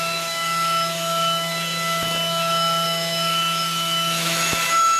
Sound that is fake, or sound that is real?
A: fake